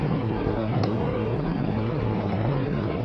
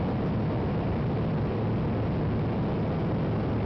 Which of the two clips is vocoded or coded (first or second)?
first